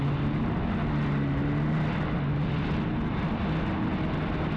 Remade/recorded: recorded